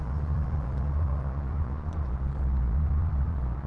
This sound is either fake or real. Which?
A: fake